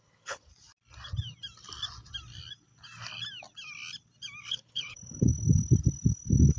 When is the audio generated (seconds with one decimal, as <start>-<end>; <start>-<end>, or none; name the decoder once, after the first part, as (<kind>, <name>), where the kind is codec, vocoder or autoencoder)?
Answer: 0.0-0.5 (codec, HILCodec); 4.5-5.3